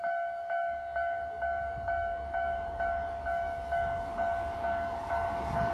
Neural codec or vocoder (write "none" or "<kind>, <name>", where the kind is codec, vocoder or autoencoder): codec, DAC